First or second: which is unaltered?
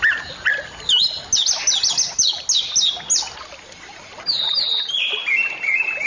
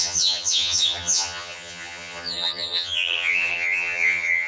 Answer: first